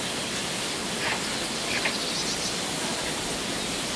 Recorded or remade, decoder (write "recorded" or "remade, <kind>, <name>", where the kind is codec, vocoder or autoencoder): recorded